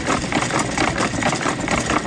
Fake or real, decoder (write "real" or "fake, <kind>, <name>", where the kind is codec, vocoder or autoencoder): real